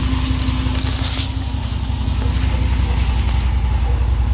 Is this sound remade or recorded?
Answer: recorded